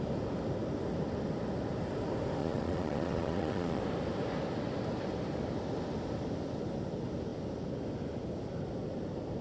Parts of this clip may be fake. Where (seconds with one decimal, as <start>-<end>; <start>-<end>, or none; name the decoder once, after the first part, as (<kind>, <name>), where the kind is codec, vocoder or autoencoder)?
2.4-3.8 (vocoder, Vocos)

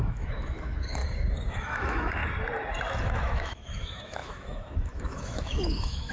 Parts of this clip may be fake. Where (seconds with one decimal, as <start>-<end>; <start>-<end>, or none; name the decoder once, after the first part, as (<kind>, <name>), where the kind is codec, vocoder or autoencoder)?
0.0-1.0 (autoencoder, DAC-VAE); 1.5-2.2; 3.0-6.1

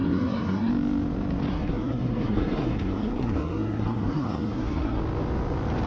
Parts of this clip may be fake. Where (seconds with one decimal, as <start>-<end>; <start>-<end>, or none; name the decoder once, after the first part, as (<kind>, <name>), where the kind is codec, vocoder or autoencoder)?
0.0-0.7 (codec, SNAC); 1.5-5.0

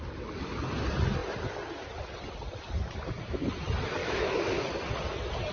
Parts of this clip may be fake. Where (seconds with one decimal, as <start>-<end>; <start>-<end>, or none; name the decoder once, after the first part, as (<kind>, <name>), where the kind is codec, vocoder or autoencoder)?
4.0-4.6 (autoencoder, DAC-VAE)

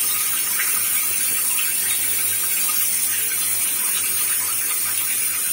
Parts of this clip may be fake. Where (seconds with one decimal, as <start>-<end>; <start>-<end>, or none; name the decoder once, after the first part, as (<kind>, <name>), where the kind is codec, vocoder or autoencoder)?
0.0-5.5 (vocoder, BigVGAN v2)

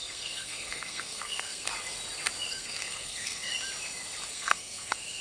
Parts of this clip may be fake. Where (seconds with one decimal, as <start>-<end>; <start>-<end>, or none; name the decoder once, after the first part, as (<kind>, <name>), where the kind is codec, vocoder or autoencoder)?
0.0-1.7 (codec, SNAC); 2.5-3.5; 4.3-5.2